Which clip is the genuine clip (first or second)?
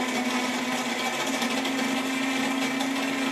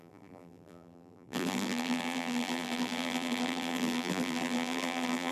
first